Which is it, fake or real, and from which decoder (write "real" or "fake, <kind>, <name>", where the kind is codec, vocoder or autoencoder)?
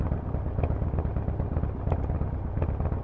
real